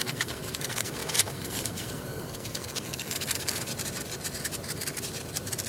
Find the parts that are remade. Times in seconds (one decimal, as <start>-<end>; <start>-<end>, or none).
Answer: 0.0-3.7